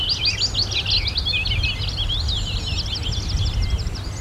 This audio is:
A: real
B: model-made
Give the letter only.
A